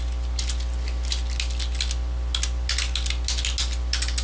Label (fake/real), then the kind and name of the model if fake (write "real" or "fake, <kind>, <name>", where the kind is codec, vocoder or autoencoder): real